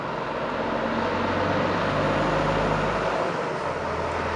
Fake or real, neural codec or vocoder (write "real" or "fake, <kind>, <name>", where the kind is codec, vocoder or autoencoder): real